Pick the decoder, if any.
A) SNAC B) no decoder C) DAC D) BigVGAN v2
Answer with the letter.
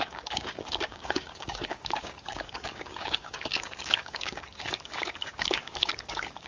C